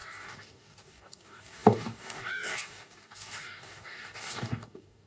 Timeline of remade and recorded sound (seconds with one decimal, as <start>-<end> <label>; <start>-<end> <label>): 0.0-5.1 remade